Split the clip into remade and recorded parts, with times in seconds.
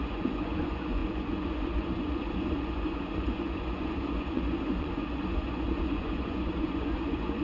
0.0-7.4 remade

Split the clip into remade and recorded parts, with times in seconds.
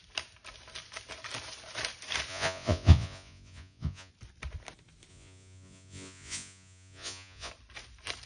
0.0-2.3 recorded; 2.3-4.1 remade; 4.1-5.1 recorded; 5.1-7.5 remade; 7.5-8.3 recorded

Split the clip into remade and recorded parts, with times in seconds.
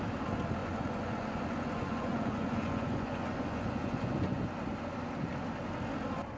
0.0-0.6 recorded; 0.6-4.4 remade; 4.4-6.4 recorded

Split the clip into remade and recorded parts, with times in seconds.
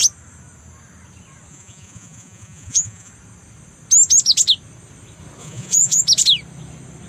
0.0-1.5 recorded; 1.5-3.1 remade; 3.1-5.4 recorded; 5.4-6.0 remade; 6.0-7.1 recorded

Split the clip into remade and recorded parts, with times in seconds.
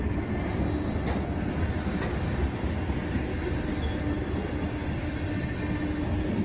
0.0-6.4 recorded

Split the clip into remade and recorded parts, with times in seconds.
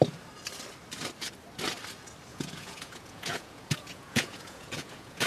0.0-2.3 recorded; 2.3-5.3 remade